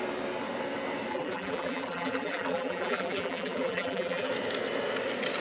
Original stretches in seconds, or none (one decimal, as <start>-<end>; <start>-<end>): 0.0-1.1; 4.3-5.4